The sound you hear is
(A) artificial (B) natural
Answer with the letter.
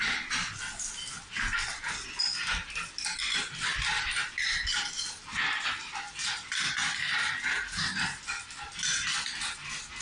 B